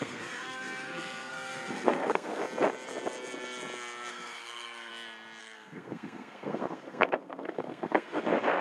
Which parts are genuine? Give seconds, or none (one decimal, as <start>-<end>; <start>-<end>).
2.4-4.1; 4.9-5.4